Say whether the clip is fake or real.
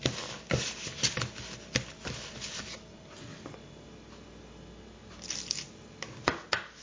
real